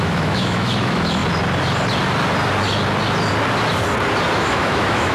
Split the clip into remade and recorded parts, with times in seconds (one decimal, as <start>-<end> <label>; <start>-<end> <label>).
0.0-1.2 remade; 1.2-4.3 recorded; 4.3-5.1 remade